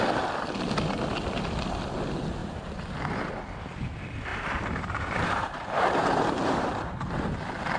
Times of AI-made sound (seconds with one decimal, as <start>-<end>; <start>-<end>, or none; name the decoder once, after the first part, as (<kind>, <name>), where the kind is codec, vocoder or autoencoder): 2.4-3.0 (vocoder, BigVGAN v2); 4.3-7.1